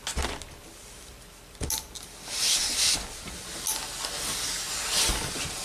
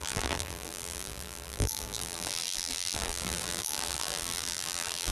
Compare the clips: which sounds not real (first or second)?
second